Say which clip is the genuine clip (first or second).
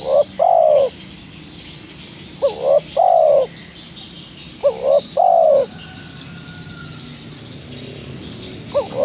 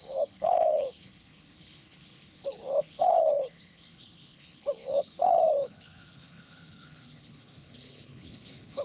first